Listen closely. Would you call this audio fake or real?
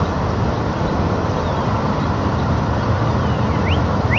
real